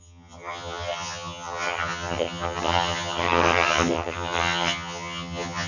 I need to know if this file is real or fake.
fake